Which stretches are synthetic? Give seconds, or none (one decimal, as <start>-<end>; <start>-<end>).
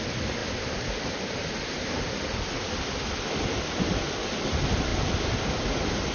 none